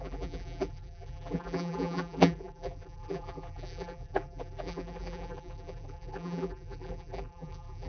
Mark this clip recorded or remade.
remade